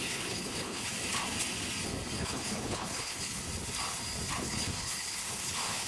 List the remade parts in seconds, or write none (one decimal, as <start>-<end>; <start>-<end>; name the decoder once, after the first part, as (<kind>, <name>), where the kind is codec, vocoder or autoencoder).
0.0-0.9 (codec, HILCodec); 2.2-3.4; 4.4-5.9